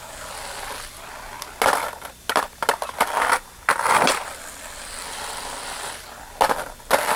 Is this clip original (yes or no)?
yes